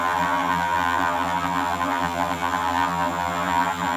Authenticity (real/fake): fake